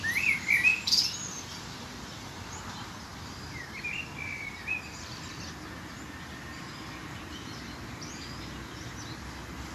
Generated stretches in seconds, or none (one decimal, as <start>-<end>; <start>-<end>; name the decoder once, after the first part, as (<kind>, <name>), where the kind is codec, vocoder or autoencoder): 0.7-1.5 (vocoder, BigVGAN v2); 3.1-3.9